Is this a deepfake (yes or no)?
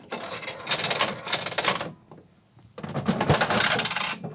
no